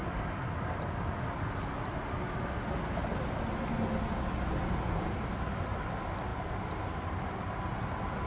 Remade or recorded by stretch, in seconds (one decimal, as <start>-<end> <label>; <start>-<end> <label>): 0.0-8.3 recorded